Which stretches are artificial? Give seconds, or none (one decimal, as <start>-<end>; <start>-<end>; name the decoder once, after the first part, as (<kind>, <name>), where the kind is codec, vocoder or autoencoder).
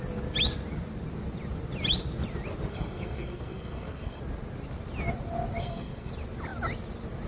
2.7-4.2 (codec, SNAC); 5.6-6.1